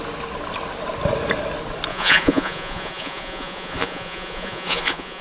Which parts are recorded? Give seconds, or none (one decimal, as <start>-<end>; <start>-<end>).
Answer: 0.0-1.9